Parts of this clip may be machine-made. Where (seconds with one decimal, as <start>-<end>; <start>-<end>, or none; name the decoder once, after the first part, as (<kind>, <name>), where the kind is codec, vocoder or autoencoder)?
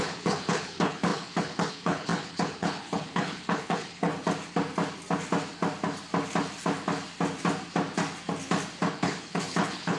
0.0-4.1 (codec, HILCodec); 8.9-10.0